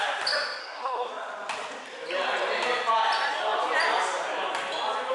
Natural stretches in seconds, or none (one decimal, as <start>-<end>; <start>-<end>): 0.0-0.6; 1.1-5.1